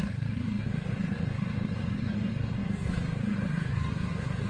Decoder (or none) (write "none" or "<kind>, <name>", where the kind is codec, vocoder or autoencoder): codec, SNAC